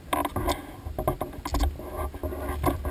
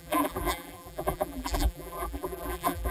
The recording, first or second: first